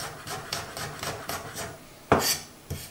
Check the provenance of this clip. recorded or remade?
recorded